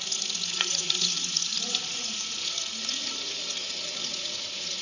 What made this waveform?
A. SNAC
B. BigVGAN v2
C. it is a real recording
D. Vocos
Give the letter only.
D